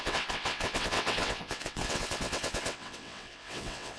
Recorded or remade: remade